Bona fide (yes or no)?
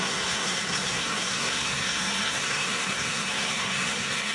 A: no